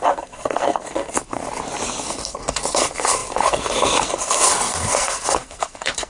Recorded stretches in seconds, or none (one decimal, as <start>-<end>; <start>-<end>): 1.4-1.9

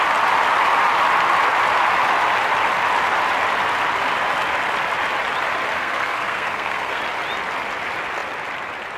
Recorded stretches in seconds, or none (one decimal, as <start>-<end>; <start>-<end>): 0.0-5.8; 7.0-9.0

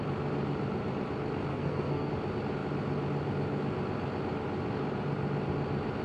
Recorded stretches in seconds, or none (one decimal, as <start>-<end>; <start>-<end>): 0.0-1.5; 2.1-6.0

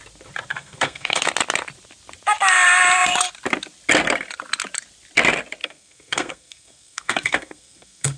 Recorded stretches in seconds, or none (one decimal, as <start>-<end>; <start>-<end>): 0.0-0.5; 1.2-5.6

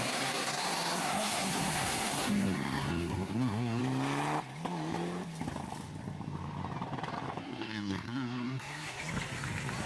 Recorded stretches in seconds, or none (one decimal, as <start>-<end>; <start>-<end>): 3.8-7.4; 9.0-9.9

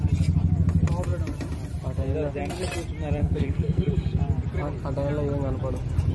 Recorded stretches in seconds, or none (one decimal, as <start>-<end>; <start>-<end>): 0.0-3.2; 4.2-6.1